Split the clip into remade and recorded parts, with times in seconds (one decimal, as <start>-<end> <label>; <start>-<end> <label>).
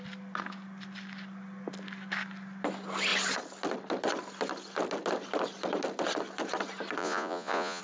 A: 0.0-7.0 recorded; 7.0-7.8 remade